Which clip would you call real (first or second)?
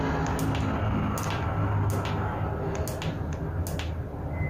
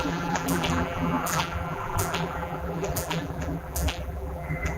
first